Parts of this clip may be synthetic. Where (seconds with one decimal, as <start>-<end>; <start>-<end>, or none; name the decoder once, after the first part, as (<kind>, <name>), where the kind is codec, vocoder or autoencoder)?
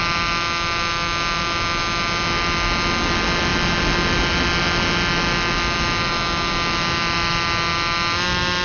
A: none